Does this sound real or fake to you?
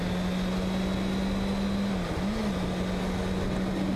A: real